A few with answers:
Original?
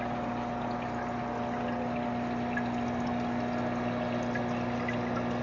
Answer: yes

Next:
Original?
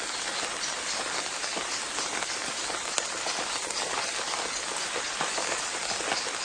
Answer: yes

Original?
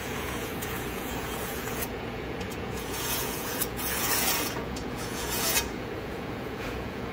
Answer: no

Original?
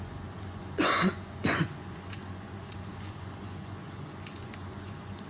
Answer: no